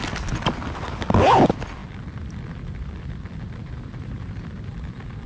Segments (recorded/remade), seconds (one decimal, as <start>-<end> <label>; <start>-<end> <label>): 0.0-3.6 recorded; 3.6-4.4 remade; 4.4-5.3 recorded